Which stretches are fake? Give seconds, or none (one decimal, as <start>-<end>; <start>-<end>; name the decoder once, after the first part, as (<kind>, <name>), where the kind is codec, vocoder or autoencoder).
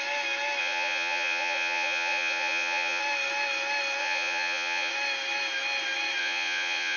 0.6-3.0 (vocoder, Vocos); 4.0-4.9; 6.2-7.0